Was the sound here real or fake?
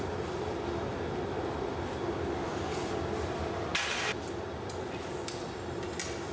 real